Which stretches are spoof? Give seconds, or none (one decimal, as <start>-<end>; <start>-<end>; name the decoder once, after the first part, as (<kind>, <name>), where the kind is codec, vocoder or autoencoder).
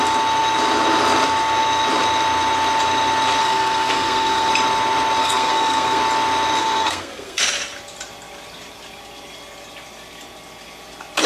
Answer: 3.4-4.5 (codec, SNAC); 5.2-6.0; 6.6-7.4